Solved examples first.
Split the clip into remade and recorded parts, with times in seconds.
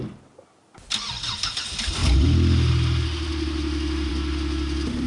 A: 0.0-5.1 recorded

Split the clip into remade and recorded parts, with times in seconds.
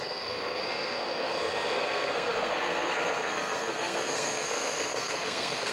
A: 0.0-5.7 remade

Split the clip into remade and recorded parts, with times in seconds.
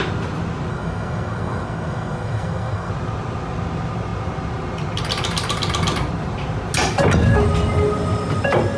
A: 0.0-0.7 recorded; 0.7-2.9 remade; 2.9-8.8 recorded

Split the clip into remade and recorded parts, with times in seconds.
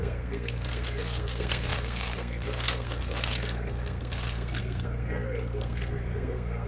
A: 0.0-6.7 remade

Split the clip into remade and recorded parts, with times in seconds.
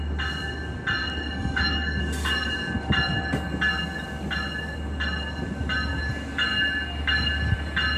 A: 0.0-1.0 recorded; 1.0-2.5 remade; 2.5-8.0 recorded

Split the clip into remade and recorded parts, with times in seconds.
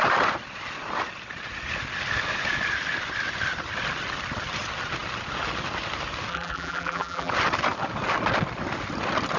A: 0.0-6.3 recorded; 6.3-7.3 remade; 7.3-9.4 recorded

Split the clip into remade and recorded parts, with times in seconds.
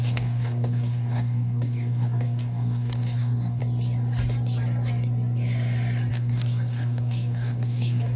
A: 0.0-3.6 remade; 3.6-6.1 recorded; 6.1-8.2 remade